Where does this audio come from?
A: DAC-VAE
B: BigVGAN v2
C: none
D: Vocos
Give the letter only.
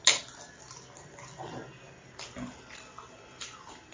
C